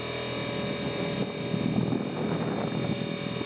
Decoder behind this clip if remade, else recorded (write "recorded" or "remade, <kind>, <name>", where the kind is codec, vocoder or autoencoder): recorded